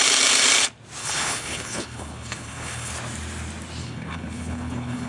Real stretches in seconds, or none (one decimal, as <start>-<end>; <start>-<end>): 0.0-1.0; 2.9-3.8

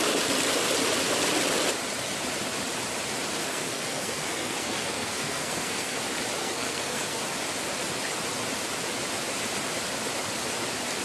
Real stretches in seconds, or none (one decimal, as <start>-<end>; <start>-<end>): 0.0-3.4; 6.0-6.4; 7.2-11.0

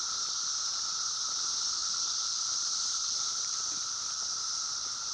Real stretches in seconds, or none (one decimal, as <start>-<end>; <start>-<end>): 0.0-1.8; 3.6-5.1

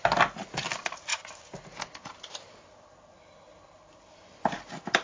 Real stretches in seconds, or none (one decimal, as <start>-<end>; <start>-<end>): 0.0-5.0